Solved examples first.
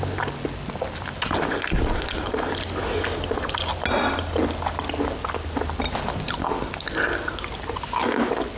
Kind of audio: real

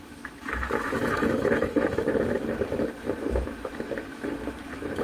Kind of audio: fake